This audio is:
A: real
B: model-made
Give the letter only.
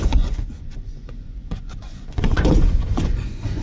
B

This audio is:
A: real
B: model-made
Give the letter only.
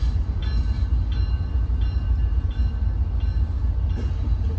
A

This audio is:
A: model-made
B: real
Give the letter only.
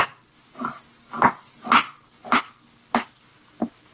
B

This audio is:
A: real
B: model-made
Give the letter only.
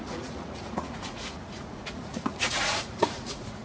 B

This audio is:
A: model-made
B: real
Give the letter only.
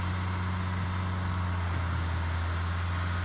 B